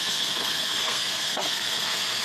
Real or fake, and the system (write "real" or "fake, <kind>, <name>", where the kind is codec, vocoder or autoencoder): fake, codec, SNAC